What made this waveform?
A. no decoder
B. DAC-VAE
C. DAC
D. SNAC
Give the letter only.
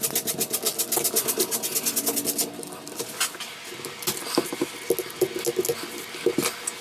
A